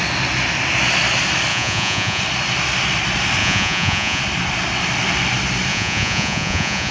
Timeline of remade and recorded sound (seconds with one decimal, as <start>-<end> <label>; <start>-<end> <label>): 0.0-1.5 recorded; 1.5-2.2 remade; 2.2-3.4 recorded; 3.4-4.2 remade; 4.2-5.7 recorded; 5.7-6.9 remade